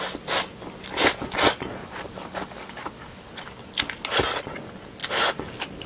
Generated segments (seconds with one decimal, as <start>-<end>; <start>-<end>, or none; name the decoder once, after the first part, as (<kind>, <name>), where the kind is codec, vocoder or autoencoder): 1.8-3.3 (codec, DAC)